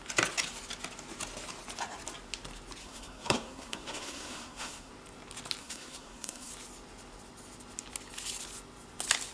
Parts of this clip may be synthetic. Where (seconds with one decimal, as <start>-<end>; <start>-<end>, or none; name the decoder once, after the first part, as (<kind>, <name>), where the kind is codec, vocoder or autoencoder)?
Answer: 2.8-4.9 (codec, SNAC); 5.6-6.5